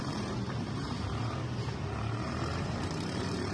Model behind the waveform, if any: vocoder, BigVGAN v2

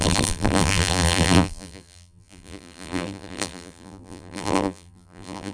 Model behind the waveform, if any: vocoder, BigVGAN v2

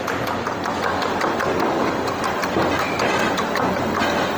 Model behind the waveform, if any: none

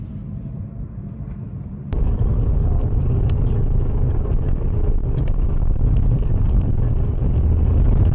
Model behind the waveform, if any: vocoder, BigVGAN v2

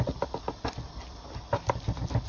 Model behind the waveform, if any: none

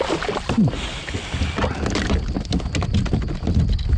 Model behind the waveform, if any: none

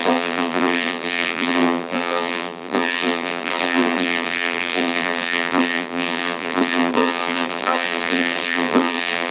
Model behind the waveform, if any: vocoder, BigVGAN v2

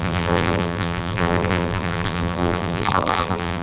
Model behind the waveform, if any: vocoder, BigVGAN v2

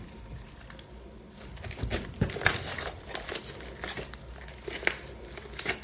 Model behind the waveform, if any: none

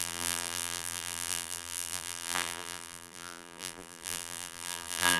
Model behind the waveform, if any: vocoder, BigVGAN v2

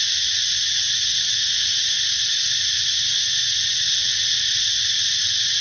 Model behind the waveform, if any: none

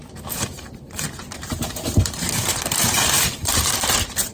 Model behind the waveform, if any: vocoder, BigVGAN v2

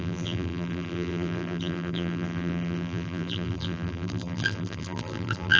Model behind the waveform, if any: vocoder, BigVGAN v2